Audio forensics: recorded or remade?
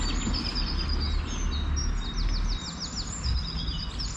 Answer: recorded